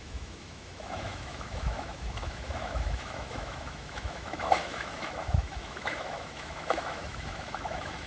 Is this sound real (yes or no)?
no